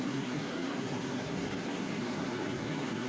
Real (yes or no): no